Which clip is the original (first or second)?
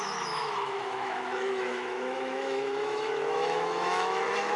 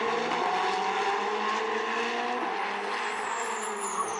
second